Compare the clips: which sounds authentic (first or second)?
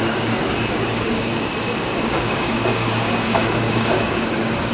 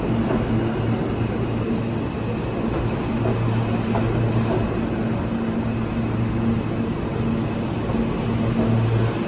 second